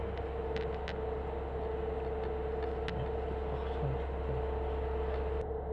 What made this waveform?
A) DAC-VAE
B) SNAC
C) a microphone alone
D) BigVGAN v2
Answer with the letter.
C